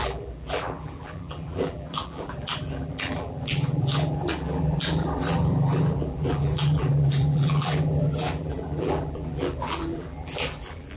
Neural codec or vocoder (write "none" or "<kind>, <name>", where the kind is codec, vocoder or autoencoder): vocoder, BigVGAN v2